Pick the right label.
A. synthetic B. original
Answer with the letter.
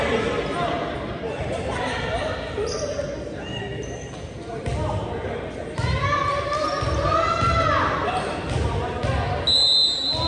B